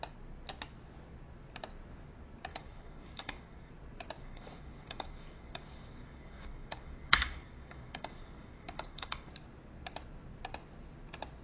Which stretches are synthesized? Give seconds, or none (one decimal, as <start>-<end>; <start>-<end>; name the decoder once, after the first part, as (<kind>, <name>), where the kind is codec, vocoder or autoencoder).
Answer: 2.5-3.7 (codec, DAC); 4.2-9.3